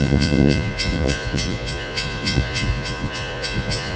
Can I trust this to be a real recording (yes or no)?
no